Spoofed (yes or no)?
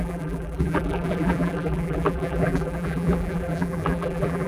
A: yes